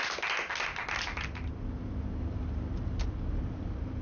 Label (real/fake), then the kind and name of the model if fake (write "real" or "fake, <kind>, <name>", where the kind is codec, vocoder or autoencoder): real